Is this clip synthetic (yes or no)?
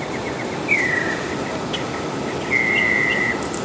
no